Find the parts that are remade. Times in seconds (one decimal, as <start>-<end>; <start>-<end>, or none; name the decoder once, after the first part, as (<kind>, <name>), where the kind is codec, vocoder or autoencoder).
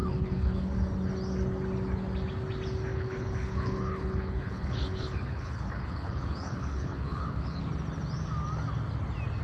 0.0-0.7 (codec, HILCodec); 2.9-7.6